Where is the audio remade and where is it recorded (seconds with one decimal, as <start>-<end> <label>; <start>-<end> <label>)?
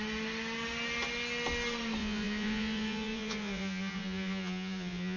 0.0-2.0 recorded; 2.0-5.2 remade